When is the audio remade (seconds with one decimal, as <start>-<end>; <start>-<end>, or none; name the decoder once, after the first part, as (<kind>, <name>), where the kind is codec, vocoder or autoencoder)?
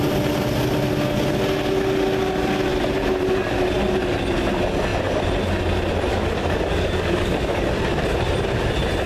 6.1-7.6 (codec, DAC)